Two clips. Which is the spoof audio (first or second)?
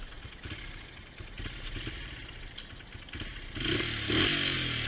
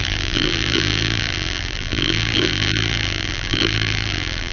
second